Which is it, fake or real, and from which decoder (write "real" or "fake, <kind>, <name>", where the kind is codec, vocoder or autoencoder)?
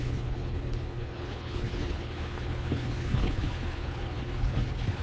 fake, codec, HILCodec